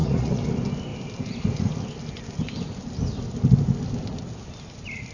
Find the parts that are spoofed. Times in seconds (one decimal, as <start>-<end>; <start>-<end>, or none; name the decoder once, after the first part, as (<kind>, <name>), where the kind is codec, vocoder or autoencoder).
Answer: 0.0-0.5 (vocoder, Vocos)